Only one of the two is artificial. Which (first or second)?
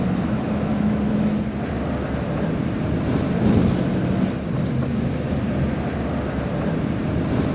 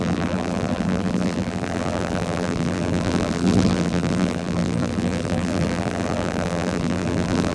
second